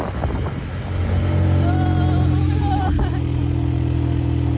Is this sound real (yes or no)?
yes